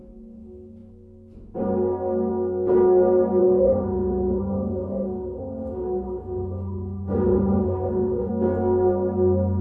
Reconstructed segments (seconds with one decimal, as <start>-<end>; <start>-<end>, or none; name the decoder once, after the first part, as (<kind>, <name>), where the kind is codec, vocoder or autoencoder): 3.4-8.3 (autoencoder, DAC-VAE)